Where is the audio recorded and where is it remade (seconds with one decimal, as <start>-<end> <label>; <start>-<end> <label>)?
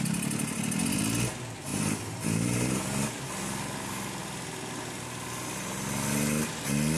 0.0-1.7 recorded; 1.7-3.3 remade; 3.3-7.0 recorded